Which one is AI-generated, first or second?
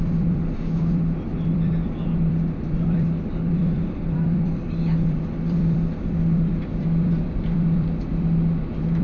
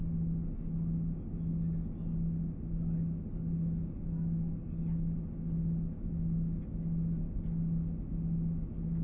first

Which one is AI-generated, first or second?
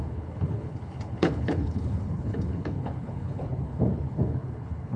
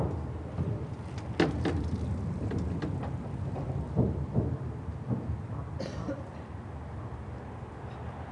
first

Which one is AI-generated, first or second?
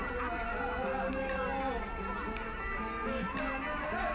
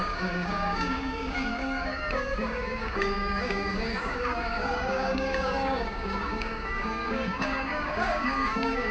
second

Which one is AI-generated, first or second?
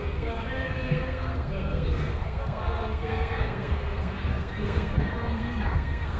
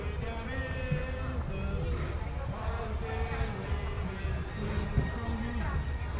first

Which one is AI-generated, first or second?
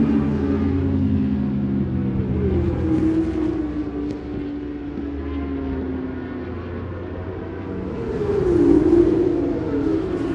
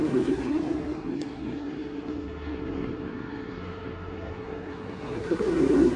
second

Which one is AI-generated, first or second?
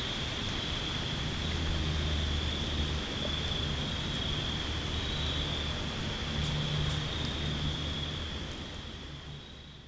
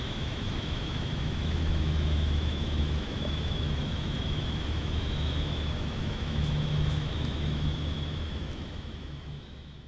second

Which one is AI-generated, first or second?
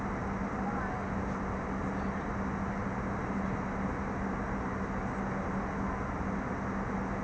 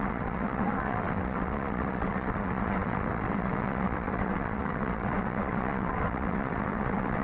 second